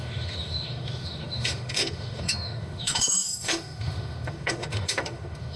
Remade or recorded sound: remade